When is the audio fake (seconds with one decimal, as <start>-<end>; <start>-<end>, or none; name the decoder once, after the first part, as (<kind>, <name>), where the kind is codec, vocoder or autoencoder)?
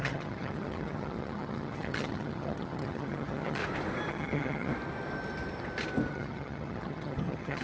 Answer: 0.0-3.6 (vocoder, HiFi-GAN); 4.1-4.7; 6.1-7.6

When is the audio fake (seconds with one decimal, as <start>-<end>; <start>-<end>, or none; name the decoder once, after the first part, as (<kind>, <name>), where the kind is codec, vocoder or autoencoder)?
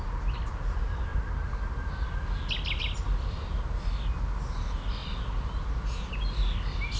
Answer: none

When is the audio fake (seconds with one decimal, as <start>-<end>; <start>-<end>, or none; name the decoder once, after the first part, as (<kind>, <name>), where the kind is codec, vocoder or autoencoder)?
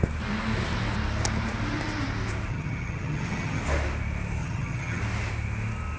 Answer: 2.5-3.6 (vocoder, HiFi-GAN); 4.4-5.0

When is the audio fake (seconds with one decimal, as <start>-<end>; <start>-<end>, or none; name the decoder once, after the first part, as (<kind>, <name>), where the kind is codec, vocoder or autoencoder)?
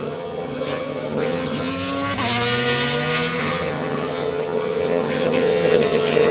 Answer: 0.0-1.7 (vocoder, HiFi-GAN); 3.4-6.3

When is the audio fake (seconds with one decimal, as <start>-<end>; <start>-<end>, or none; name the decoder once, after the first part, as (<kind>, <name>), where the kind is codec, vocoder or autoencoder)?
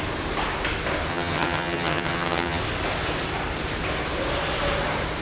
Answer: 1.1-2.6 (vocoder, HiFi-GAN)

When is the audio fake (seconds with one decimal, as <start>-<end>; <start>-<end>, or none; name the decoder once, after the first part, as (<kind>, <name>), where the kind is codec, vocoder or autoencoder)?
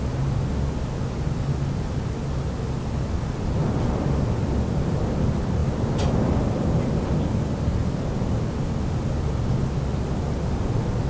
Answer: none